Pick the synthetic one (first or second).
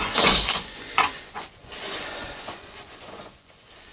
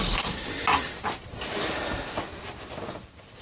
first